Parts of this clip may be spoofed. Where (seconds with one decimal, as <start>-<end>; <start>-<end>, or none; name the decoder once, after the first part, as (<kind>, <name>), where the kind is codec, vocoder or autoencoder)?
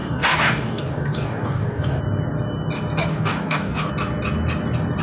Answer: 0.0-2.0 (codec, DAC); 3.1-3.9